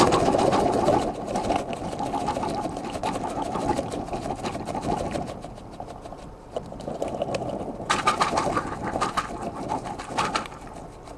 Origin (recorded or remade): recorded